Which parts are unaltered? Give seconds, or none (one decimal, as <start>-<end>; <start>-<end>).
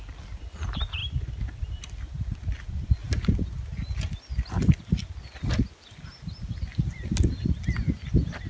3.0-4.3